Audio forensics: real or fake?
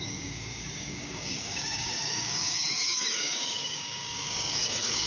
fake